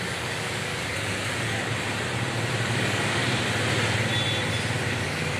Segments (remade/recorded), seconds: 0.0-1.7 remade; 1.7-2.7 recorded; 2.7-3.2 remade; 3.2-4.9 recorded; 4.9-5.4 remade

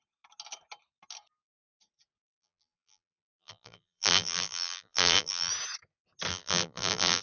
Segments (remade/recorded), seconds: 0.0-2.4 recorded; 2.4-5.5 remade; 5.5-6.3 recorded; 6.3-7.2 remade